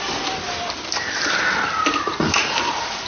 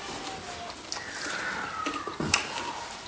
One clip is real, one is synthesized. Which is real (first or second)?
second